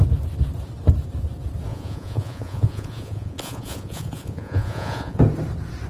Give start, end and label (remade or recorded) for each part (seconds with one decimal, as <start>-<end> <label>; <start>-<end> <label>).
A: 0.0-1.7 recorded; 1.7-5.2 remade; 5.2-5.9 recorded